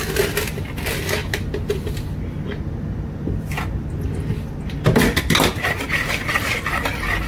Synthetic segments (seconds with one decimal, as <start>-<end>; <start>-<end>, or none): none